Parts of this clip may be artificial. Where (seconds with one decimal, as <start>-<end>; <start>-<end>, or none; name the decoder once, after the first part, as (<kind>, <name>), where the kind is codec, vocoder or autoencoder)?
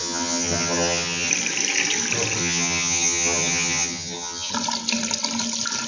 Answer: 0.0-1.3 (vocoder, HiFi-GAN); 2.4-4.5